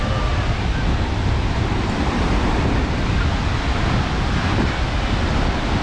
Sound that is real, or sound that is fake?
real